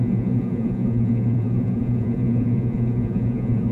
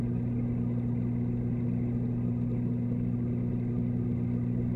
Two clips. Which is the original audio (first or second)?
second